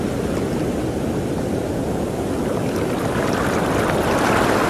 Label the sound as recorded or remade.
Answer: recorded